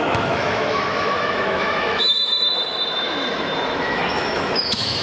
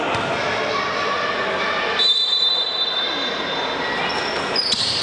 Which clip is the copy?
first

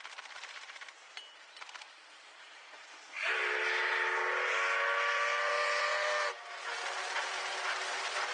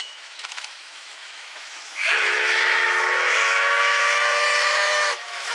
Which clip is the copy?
second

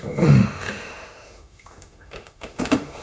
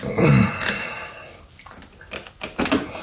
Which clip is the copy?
first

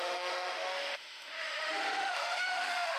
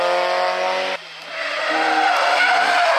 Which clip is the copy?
first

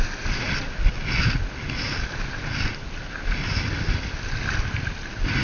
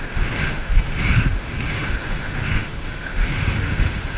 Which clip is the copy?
second